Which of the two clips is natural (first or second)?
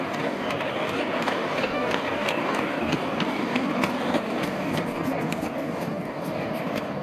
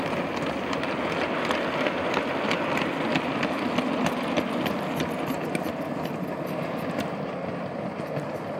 second